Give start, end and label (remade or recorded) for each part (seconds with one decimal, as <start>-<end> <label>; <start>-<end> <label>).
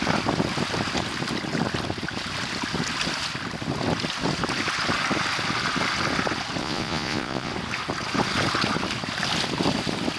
0.0-6.6 recorded; 6.6-7.5 remade; 7.5-10.2 recorded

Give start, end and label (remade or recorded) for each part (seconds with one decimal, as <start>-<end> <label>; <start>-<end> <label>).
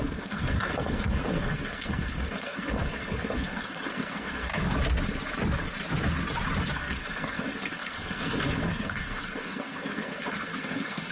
0.0-4.5 remade; 4.5-6.7 recorded; 6.7-11.1 remade